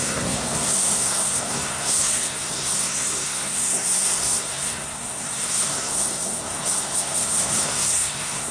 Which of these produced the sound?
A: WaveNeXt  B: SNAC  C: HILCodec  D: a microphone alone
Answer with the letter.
B